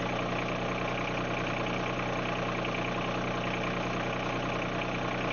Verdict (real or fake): real